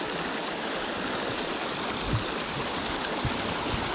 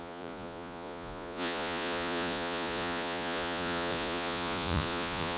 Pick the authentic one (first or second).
first